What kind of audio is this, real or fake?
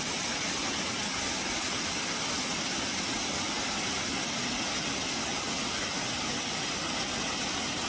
real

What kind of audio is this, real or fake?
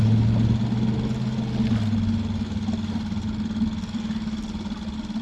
real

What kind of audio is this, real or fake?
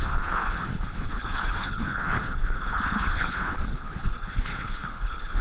fake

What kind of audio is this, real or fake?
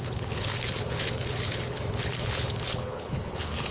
fake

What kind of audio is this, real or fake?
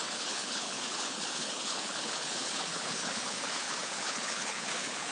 fake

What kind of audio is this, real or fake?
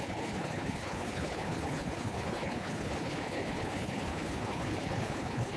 fake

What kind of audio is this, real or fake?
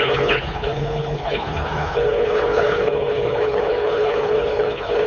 fake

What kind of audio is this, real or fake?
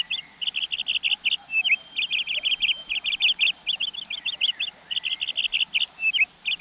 real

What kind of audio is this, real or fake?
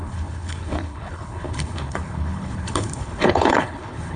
fake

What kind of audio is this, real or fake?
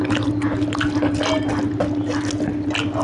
real